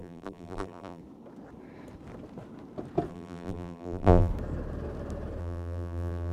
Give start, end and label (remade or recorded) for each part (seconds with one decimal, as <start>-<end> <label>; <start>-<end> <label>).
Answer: 0.0-1.0 remade; 1.0-3.1 recorded; 3.1-4.3 remade; 4.3-5.4 recorded; 5.4-6.3 remade